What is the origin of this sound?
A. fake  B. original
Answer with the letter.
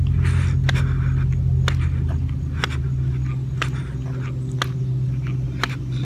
B